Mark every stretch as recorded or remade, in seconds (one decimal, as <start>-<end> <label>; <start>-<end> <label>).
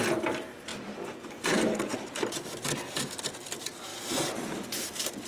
0.0-5.3 recorded